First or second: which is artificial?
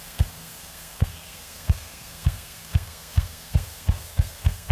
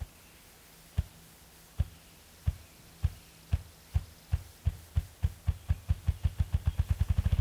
first